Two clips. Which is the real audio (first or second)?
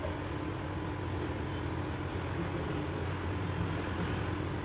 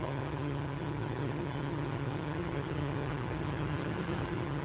first